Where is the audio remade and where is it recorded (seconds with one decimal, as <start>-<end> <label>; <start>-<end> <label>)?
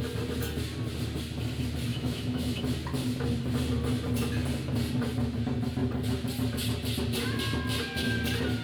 0.0-1.9 recorded; 1.9-2.6 remade; 2.6-8.6 recorded